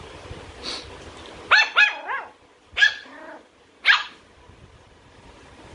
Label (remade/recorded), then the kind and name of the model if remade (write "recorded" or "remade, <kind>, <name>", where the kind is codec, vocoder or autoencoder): recorded